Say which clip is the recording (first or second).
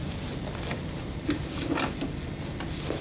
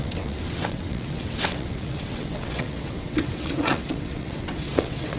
first